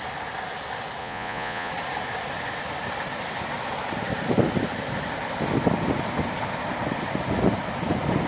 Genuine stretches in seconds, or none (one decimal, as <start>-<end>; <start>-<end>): 0.0-1.0; 1.7-8.3